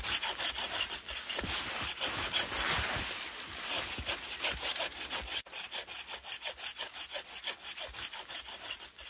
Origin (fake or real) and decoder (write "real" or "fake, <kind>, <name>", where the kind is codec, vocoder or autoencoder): real